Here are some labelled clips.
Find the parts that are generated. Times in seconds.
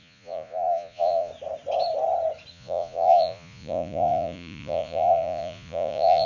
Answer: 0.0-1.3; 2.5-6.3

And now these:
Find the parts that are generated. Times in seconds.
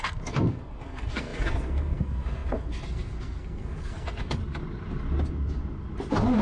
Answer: 0.0-4.4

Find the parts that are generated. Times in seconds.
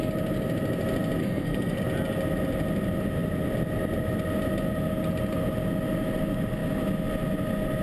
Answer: 1.2-1.8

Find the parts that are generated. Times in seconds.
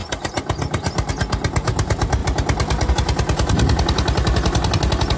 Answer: none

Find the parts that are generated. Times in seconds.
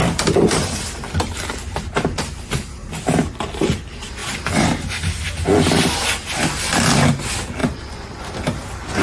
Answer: 7.6-8.3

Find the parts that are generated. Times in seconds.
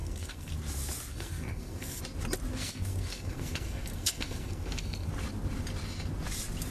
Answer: 0.0-0.5; 1.1-2.0; 2.5-5.1